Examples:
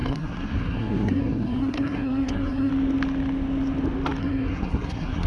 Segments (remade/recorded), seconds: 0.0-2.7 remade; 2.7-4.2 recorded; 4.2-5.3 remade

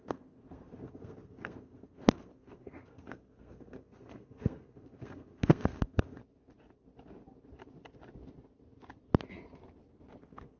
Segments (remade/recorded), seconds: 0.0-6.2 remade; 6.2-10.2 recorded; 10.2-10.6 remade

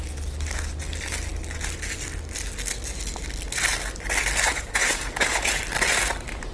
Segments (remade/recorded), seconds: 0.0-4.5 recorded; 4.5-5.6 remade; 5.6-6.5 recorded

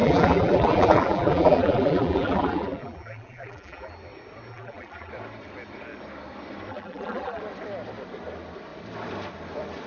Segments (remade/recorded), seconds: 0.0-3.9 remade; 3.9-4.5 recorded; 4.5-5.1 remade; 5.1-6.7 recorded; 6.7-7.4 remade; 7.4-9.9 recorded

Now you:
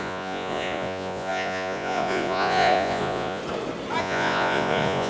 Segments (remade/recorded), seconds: 0.0-3.4 remade; 3.4-4.0 recorded; 4.0-5.1 remade

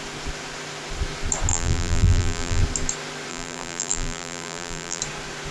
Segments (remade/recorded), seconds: 0.0-1.5 recorded; 1.5-2.6 remade; 2.6-3.3 recorded; 3.3-5.0 remade; 5.0-5.5 recorded